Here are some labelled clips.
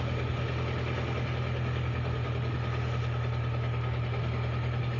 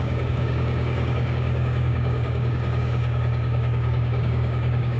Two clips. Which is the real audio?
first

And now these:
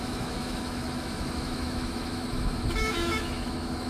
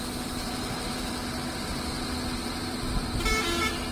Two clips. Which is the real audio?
second